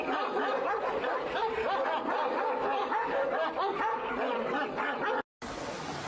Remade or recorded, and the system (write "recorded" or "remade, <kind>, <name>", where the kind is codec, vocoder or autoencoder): recorded